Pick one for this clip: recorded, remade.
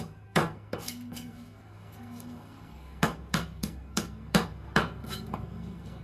remade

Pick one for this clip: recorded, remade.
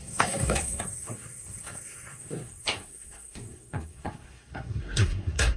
remade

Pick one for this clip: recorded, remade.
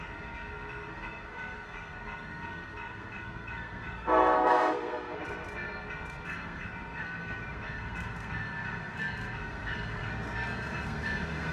remade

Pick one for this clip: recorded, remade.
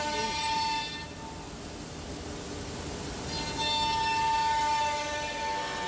recorded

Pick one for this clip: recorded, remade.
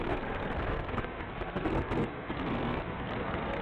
remade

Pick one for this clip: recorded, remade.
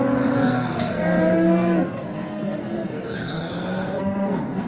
remade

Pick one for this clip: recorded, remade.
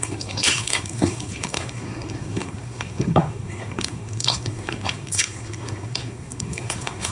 remade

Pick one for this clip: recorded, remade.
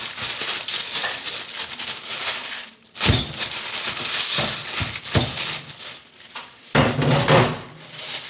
recorded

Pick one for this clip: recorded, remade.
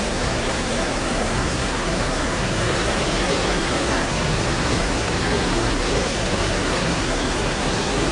remade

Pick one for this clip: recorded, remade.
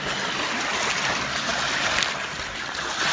recorded